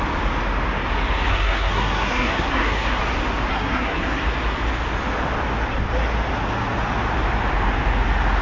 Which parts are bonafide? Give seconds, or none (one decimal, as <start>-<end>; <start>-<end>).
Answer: 0.0-1.3; 3.0-3.5; 4.2-8.4